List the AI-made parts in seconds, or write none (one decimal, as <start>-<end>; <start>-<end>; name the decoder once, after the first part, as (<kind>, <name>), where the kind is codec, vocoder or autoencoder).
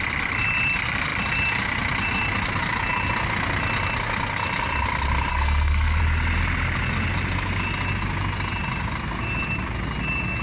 5.3-6.0 (codec, SNAC)